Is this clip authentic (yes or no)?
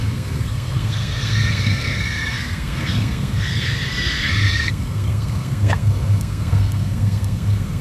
no